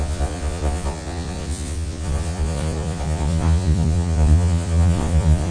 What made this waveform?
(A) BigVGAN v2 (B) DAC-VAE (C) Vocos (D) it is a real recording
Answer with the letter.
C